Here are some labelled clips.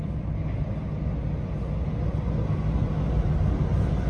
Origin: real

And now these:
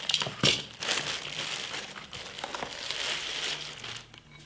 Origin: real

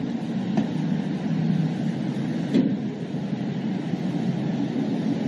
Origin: real